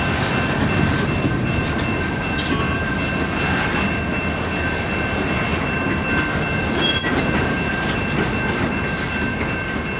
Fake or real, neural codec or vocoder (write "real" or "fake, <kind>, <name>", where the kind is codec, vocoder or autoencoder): real